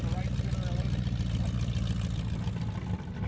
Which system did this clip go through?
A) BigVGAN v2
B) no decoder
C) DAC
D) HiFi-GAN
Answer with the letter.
B